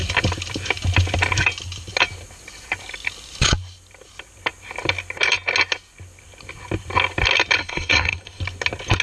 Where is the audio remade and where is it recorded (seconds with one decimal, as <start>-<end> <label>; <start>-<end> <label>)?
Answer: 0.0-7.6 recorded; 7.6-8.4 remade; 8.4-9.0 recorded